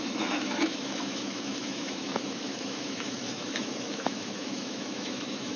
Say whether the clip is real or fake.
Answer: fake